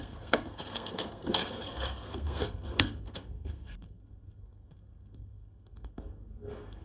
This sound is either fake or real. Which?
fake